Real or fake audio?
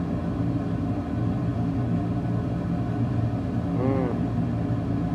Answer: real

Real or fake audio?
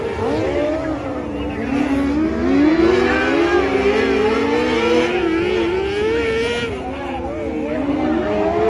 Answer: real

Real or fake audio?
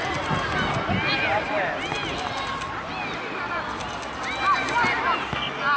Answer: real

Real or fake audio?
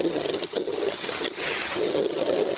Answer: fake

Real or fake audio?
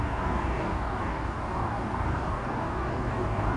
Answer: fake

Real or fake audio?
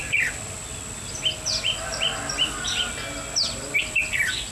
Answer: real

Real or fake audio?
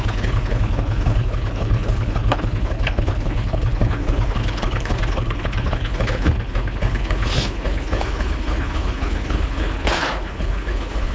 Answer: fake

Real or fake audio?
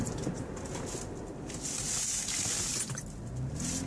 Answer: real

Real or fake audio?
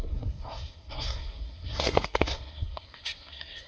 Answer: fake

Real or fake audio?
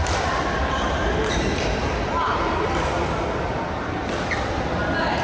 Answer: real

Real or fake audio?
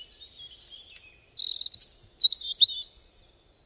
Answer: real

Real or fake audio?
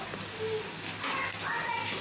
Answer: real